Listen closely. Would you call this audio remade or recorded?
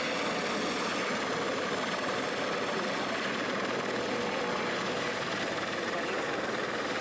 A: recorded